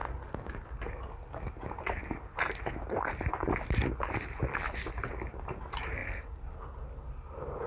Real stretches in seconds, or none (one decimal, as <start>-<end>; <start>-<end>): 0.0-7.7